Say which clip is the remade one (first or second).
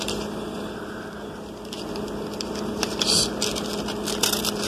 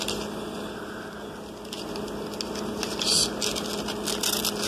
first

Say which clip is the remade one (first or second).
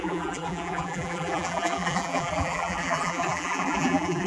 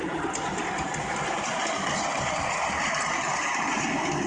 first